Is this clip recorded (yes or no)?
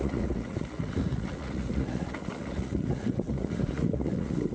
no